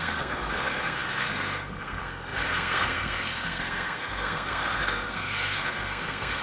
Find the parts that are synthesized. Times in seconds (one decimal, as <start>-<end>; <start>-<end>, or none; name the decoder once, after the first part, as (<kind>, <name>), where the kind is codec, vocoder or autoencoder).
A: 0.0-6.4 (codec, SNAC)